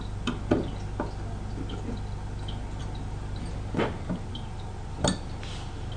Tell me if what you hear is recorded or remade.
recorded